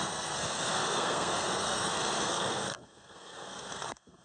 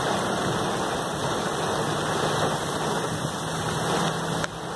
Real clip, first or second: second